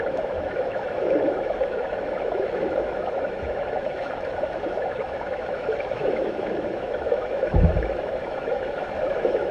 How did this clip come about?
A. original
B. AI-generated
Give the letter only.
B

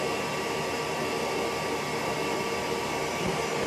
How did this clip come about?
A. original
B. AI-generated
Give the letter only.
A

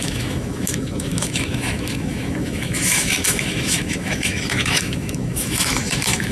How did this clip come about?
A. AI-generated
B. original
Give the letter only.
A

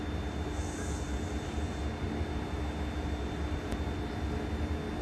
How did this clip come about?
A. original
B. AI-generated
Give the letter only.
A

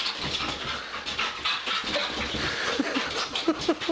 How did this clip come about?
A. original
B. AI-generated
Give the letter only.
A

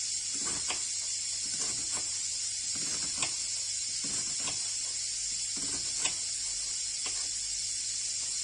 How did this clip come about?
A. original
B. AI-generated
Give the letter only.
A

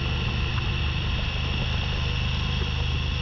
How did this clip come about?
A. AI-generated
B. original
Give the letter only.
B